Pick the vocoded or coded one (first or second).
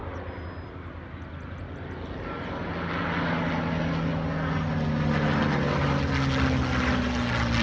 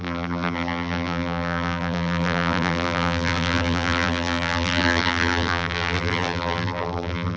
second